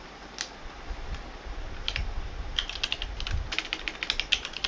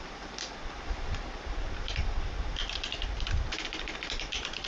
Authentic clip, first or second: first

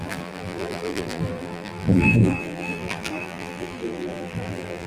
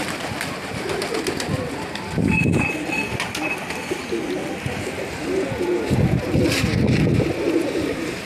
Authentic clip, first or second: second